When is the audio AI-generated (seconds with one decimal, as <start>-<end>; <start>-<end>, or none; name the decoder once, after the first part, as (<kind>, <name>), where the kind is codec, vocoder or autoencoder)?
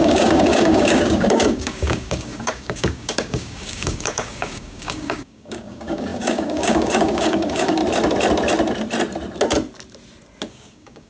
0.0-7.8 (codec, DAC); 10.5-11.1